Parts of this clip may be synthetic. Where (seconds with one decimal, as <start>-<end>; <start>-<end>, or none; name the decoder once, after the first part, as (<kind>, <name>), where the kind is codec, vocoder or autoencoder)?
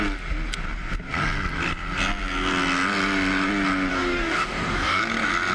3.9-5.0 (codec, DAC)